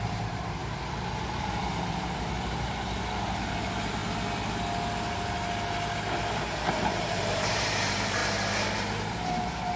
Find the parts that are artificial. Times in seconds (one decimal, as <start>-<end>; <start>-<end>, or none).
0.0-0.6; 1.4-4.0; 6.7-8.2; 9.1-9.8